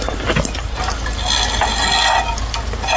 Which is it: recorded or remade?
recorded